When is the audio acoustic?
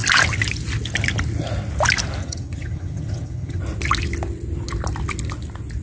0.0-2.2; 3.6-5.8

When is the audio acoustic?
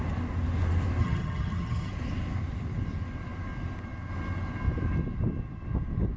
0.0-1.0; 1.9-6.2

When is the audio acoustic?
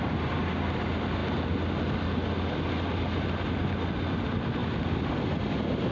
0.0-5.9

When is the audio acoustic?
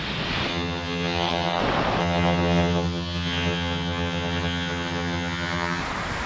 0.0-0.5; 1.6-2.0; 5.8-6.3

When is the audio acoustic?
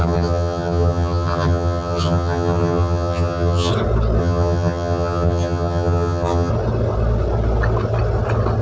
3.7-4.2; 6.5-8.6